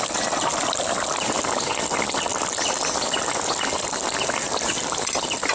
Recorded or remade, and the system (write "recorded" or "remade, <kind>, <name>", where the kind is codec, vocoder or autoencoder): recorded